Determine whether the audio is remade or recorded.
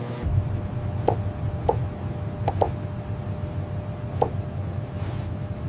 recorded